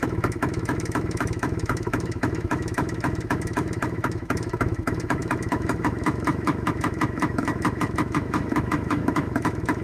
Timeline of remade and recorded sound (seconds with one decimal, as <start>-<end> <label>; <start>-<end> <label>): 0.0-9.8 remade